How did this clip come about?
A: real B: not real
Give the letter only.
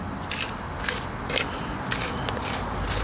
A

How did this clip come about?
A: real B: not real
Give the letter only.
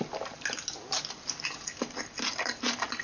A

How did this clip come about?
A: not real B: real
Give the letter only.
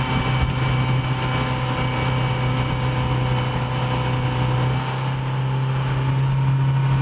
B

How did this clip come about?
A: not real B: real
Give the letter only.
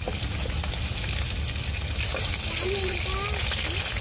B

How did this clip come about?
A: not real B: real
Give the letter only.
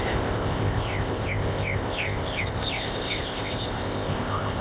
A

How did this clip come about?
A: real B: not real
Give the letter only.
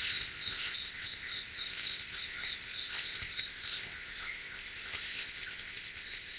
B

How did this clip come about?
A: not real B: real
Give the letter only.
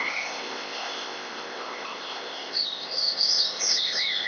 A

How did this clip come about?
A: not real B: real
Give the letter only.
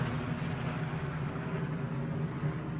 B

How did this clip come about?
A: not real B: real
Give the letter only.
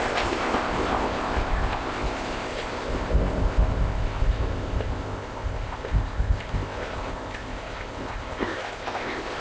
A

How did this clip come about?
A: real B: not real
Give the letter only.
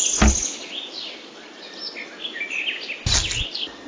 A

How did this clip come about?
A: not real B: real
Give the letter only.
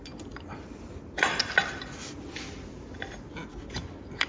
B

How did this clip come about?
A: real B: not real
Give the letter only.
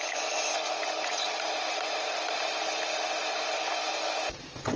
A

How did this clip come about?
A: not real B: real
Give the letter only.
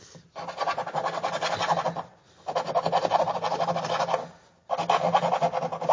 B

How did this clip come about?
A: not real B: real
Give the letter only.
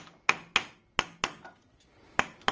B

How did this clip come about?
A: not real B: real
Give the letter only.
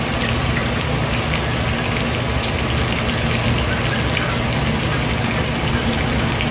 B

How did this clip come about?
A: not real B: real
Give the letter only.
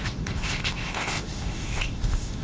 A